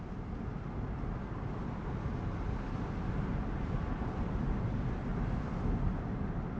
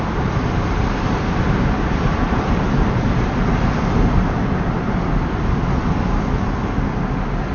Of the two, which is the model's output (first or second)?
second